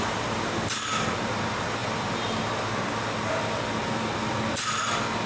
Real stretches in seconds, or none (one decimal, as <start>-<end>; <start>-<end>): 0.0-5.3